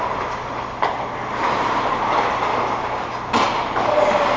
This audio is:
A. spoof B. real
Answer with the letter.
B